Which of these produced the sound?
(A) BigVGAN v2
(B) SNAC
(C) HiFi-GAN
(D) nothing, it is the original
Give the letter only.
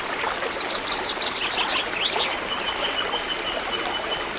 D